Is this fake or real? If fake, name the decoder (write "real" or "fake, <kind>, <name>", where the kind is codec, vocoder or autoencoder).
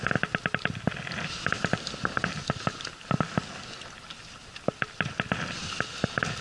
real